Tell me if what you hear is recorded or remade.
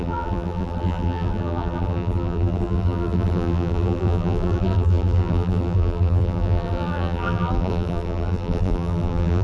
remade